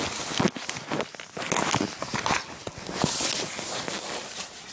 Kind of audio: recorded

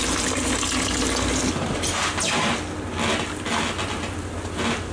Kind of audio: recorded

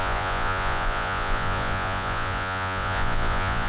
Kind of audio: remade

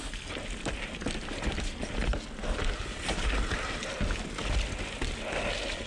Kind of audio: recorded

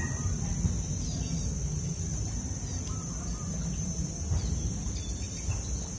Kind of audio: recorded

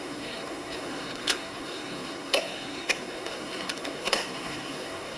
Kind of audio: remade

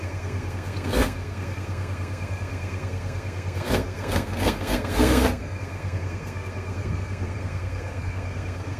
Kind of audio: remade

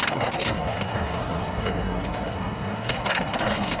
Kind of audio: remade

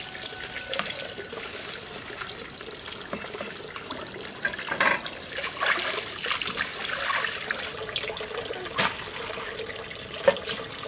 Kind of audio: recorded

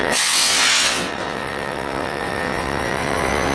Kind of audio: remade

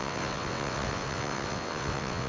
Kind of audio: remade